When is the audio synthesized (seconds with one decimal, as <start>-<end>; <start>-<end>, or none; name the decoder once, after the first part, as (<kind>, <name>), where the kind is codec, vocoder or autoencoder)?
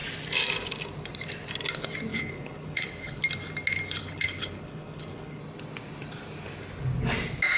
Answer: 2.1-3.2 (codec, HILCodec); 4.0-5.4